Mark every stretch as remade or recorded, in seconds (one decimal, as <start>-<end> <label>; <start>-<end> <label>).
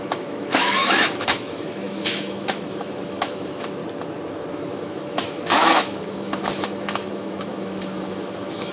0.0-3.8 remade; 3.8-4.5 recorded; 4.5-8.7 remade